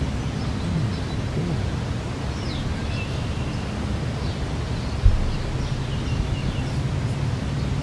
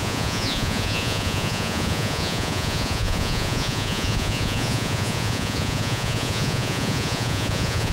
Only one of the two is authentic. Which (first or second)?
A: first